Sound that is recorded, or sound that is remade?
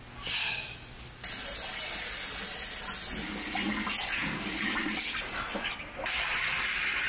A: recorded